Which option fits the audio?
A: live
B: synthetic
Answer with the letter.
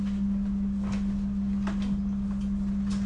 A